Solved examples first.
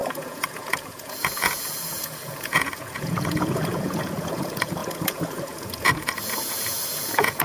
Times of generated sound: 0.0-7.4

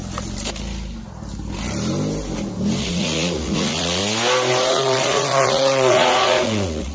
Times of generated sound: 2.8-4.0; 4.6-6.9

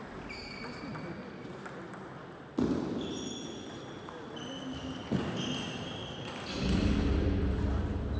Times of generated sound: none

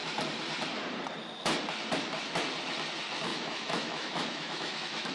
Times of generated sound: 3.3-5.1

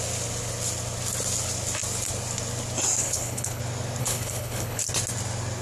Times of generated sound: 3.0-3.6; 4.0-4.8